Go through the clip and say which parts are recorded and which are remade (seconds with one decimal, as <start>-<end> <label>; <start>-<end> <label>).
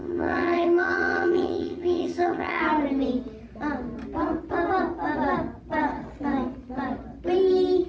0.0-2.6 remade; 2.6-7.9 recorded